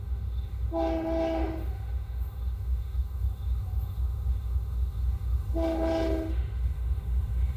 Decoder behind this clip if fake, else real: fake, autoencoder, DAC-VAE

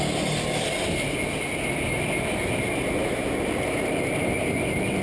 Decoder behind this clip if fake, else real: real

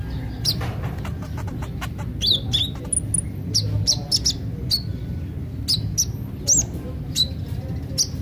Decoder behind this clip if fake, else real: real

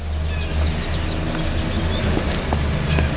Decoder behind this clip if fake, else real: real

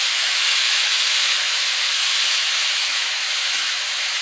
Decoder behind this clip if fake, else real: fake, autoencoder, DAC-VAE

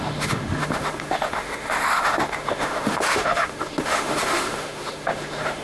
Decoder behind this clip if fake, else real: fake, autoencoder, DAC-VAE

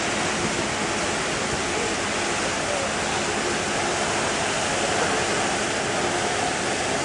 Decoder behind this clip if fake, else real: real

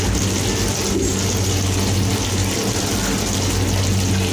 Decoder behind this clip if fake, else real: real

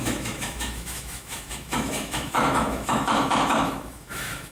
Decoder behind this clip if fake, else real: fake, autoencoder, DAC-VAE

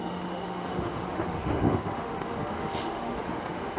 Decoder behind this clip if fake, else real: fake, autoencoder, DAC-VAE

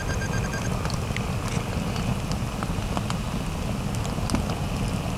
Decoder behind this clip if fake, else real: real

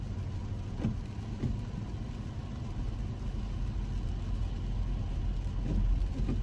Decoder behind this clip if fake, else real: real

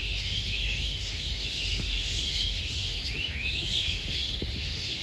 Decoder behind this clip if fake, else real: fake, autoencoder, DAC-VAE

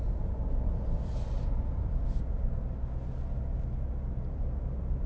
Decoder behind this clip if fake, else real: real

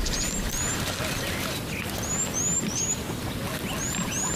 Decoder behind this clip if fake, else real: real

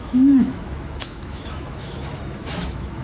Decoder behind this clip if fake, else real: fake, autoencoder, DAC-VAE